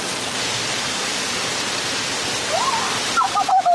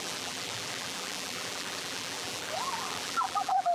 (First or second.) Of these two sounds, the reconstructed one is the second